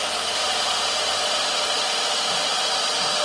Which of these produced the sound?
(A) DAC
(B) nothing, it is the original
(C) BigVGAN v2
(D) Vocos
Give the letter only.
B